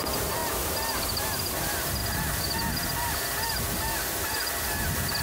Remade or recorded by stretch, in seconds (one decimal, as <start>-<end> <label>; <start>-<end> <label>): 0.0-5.2 recorded